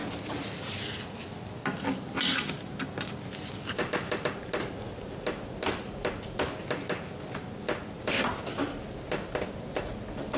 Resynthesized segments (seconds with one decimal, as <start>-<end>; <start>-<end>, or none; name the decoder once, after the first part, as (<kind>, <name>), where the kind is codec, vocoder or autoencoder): none